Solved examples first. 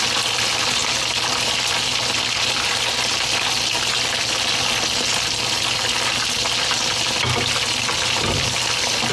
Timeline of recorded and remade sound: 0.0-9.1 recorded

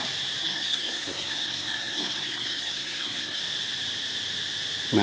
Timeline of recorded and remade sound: 0.0-0.4 recorded; 0.4-3.4 remade; 3.4-5.0 recorded

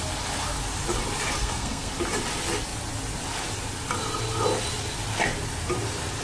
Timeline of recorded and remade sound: 0.0-1.4 recorded; 1.4-1.9 remade; 1.9-6.2 recorded

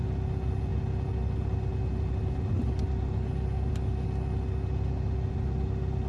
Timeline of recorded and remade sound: 0.0-6.1 recorded

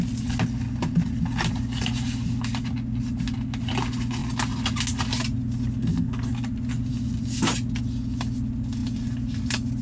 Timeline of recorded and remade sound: 0.0-5.8 recorded; 5.8-6.3 remade; 6.3-9.8 recorded

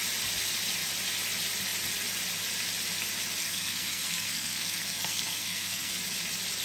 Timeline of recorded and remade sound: 0.0-3.4 recorded; 3.4-5.9 remade; 5.9-6.6 recorded

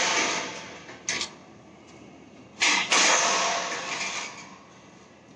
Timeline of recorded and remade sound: 0.0-5.4 recorded